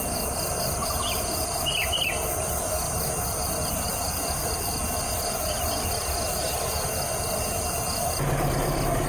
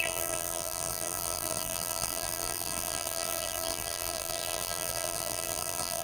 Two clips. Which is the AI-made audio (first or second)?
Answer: second